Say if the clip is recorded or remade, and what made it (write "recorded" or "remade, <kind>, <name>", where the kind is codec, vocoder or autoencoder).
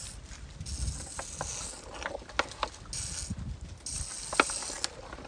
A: recorded